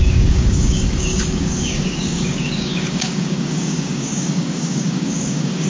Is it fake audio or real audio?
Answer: fake